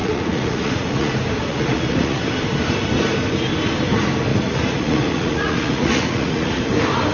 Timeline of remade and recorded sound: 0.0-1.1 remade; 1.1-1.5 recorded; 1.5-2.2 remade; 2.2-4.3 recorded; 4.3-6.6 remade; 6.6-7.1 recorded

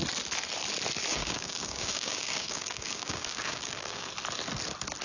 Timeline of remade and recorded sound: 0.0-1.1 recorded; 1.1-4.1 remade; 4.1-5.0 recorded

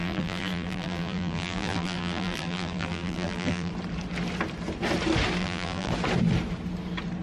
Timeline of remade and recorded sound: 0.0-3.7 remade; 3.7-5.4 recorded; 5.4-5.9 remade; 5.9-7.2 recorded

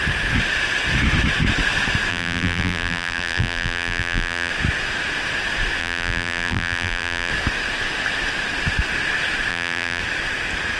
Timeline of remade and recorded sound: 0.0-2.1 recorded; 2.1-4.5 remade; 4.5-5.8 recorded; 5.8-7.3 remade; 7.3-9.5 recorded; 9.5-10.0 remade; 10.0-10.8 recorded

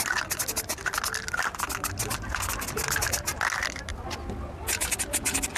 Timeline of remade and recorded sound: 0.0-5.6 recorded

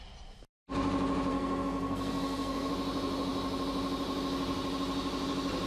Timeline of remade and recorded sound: 0.0-1.3 recorded; 1.3-2.7 remade; 2.7-5.7 recorded

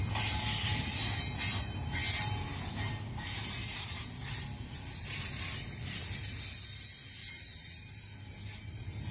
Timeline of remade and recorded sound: 0.0-7.2 recorded; 7.2-7.8 remade; 7.8-9.1 recorded